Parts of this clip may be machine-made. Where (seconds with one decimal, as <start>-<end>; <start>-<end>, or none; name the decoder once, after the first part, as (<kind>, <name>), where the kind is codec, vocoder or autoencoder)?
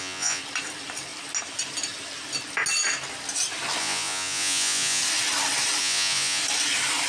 0.0-0.4 (vocoder, Vocos); 3.8-5.0; 5.8-6.4